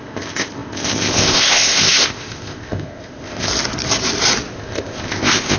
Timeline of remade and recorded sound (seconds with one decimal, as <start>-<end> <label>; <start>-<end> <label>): 0.0-3.5 remade; 3.5-4.5 recorded; 4.5-5.6 remade